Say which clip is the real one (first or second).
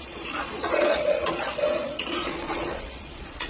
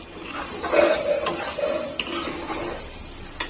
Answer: second